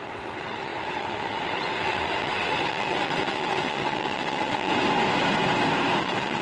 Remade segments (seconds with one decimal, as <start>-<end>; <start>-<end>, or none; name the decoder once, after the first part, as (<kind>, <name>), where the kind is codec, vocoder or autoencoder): 0.0-4.7 (vocoder, WaveNeXt); 6.0-6.4